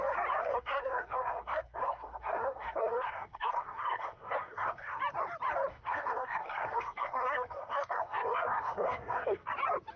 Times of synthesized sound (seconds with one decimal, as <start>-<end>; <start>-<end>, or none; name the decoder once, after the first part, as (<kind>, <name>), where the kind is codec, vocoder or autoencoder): 0.4-5.0 (codec, SNAC); 5.7-9.5